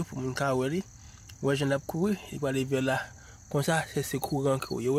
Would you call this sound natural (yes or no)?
yes